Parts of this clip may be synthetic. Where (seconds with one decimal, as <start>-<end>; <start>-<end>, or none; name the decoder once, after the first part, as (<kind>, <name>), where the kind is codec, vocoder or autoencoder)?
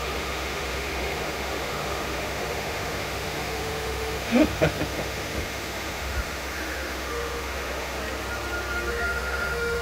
0.0-8.0 (autoencoder, DAC-VAE); 8.9-9.8